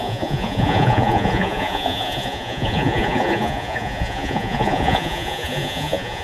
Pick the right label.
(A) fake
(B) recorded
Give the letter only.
A